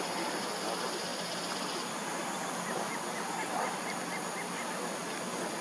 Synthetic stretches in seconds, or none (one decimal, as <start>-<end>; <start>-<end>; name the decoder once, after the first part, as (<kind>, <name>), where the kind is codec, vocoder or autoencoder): none